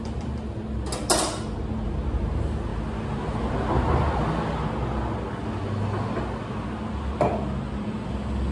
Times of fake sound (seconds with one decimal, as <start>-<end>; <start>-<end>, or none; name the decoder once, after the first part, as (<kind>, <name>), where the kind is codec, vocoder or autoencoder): none